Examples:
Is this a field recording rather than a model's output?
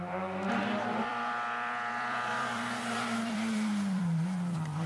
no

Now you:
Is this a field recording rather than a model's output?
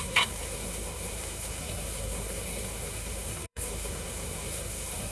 no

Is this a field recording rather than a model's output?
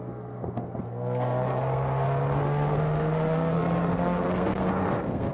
no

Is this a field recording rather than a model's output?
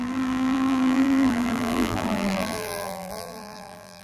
no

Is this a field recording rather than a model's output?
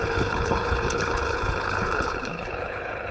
no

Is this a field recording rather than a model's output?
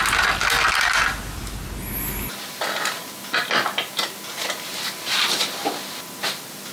yes